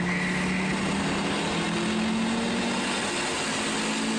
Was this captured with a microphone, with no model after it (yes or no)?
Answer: yes